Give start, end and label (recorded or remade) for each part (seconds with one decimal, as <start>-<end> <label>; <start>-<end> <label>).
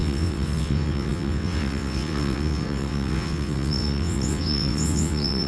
0.0-5.5 remade